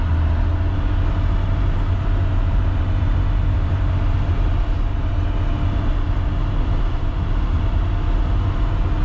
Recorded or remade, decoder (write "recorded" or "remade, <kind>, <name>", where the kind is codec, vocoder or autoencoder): recorded